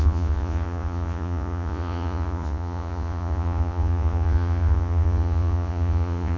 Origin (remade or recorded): remade